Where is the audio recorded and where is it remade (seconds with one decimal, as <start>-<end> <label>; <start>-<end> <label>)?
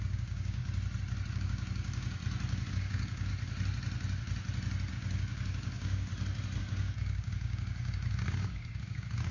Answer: 0.0-0.6 remade; 0.6-1.3 recorded; 1.3-2.2 remade; 2.2-2.7 recorded; 2.7-3.3 remade; 3.3-4.9 recorded; 4.9-6.1 remade; 6.1-6.6 recorded; 6.6-9.3 remade